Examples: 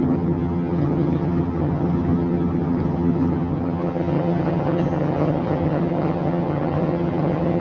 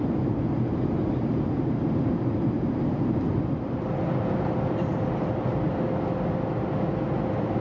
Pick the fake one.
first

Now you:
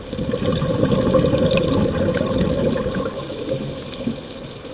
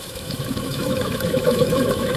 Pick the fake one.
second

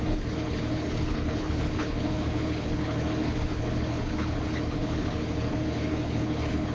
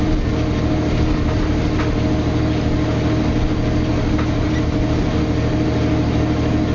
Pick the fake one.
first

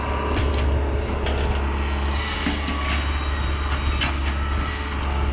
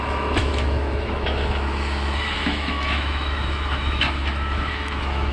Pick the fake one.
second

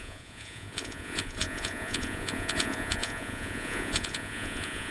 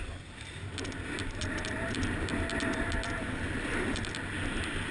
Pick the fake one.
first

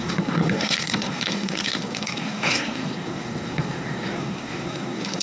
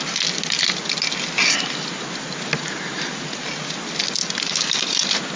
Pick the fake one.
first